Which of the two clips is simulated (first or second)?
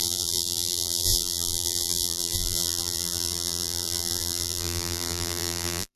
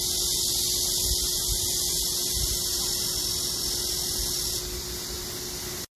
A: first